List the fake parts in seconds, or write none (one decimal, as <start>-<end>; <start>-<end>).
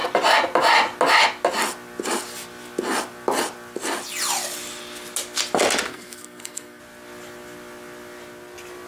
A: 5.9-6.8